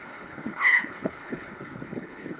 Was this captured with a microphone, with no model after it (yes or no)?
no